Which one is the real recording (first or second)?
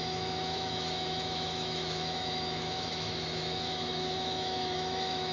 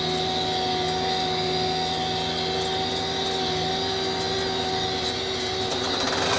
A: second